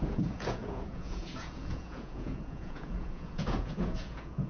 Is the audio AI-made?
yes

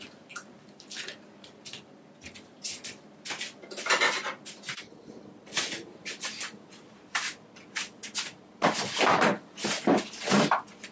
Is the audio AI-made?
no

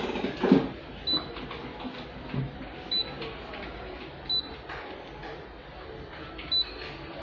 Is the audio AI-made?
no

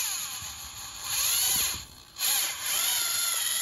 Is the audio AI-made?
yes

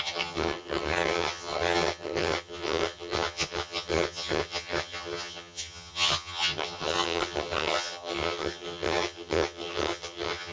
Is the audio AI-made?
yes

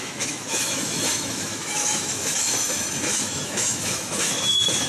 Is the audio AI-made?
yes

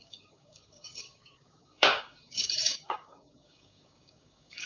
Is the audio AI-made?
yes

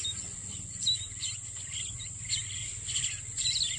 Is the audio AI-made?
no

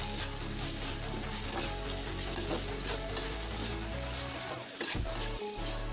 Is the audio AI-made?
no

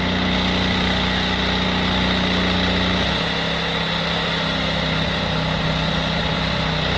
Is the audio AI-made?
no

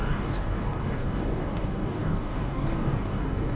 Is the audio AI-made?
yes